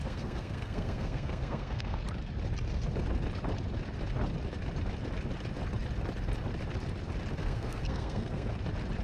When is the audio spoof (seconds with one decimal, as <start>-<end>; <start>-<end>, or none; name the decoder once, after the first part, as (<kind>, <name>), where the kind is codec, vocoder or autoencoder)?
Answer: 0.0-2.0 (codec, SNAC); 7.4-8.5